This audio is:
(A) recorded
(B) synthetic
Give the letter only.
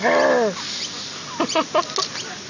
A